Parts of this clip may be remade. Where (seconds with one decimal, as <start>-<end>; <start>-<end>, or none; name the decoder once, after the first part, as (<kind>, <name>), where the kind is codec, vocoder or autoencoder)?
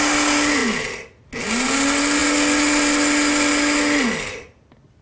none